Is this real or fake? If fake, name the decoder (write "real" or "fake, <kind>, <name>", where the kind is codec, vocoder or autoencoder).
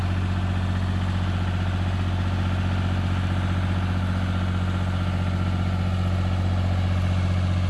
real